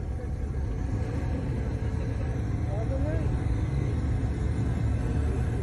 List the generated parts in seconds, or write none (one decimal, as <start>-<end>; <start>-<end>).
3.4-3.9